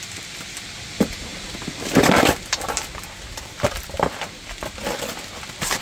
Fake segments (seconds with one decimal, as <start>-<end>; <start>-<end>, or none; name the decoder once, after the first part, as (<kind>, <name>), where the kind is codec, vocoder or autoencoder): none